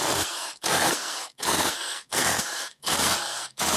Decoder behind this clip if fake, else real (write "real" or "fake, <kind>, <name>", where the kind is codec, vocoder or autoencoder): fake, codec, SNAC